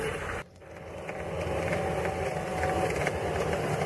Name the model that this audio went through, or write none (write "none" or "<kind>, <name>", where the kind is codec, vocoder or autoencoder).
none